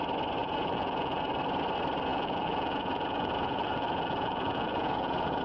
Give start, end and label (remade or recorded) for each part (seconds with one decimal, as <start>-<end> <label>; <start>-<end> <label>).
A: 0.0-0.4 recorded; 0.4-1.3 remade; 1.3-2.1 recorded; 2.1-5.4 remade